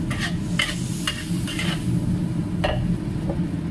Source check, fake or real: real